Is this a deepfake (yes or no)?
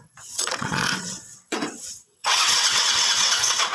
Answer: yes